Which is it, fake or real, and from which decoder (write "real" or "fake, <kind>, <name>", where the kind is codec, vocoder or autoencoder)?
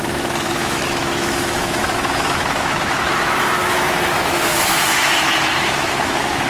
fake, autoencoder, DAC-VAE